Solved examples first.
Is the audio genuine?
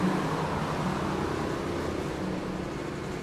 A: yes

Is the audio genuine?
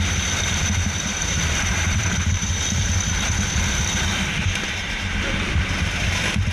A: no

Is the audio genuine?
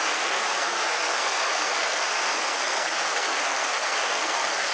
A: no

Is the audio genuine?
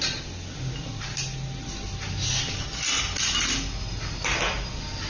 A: yes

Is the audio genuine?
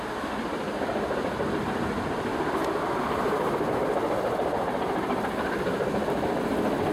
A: yes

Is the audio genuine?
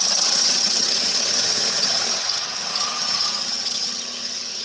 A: no